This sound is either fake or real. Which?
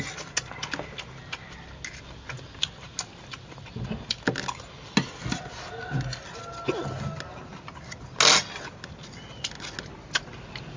real